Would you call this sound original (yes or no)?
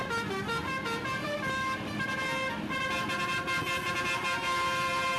yes